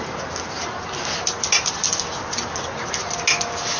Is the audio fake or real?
real